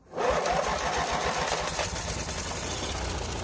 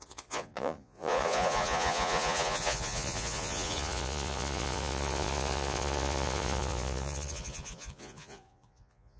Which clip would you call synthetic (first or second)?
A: second